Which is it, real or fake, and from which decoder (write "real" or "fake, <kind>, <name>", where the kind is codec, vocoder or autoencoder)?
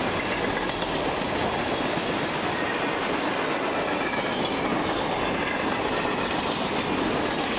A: real